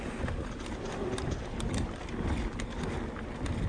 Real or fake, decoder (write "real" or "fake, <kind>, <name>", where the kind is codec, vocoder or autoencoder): real